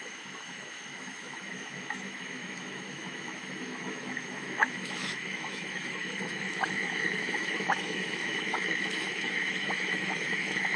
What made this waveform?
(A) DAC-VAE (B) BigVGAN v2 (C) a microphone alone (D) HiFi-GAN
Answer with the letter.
A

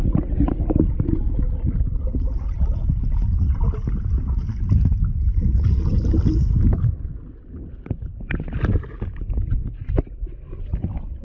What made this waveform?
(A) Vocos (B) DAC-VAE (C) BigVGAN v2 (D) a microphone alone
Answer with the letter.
D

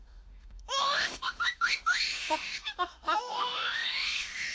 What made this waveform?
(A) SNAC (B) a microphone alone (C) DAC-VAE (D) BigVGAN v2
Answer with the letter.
C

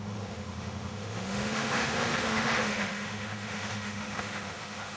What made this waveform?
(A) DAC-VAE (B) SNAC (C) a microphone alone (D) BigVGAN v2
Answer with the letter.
A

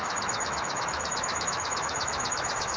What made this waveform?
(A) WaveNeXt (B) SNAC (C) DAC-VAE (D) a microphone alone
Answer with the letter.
C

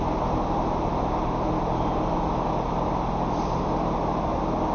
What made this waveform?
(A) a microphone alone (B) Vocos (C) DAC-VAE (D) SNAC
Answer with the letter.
A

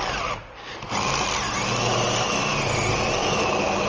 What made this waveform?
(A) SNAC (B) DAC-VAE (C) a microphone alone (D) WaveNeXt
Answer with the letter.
C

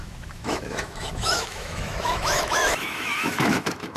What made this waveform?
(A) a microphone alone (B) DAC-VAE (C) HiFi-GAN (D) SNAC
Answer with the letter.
B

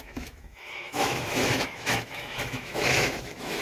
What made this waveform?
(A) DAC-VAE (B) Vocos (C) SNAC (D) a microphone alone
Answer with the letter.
A